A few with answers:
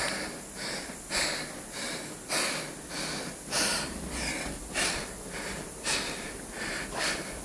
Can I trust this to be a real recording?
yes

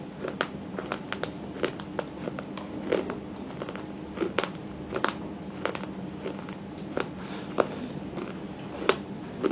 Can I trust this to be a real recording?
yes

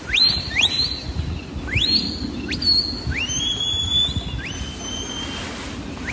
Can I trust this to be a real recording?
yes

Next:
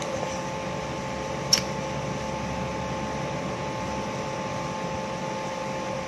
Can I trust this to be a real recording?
yes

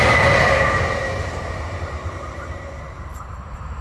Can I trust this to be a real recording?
no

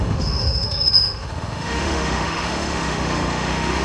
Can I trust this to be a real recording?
no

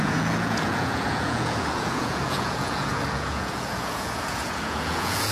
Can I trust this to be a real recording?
no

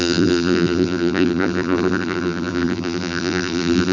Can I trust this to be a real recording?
no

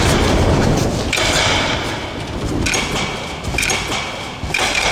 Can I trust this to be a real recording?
yes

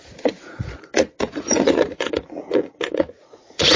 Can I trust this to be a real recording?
no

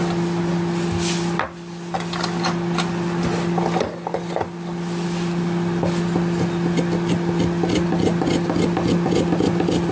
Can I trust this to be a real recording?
yes